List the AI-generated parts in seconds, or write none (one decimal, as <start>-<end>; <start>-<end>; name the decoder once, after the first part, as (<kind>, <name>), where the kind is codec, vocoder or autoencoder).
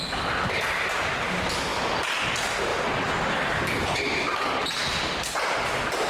none